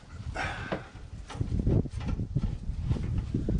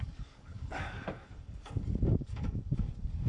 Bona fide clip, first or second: first